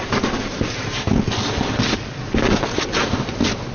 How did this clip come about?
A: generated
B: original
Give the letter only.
B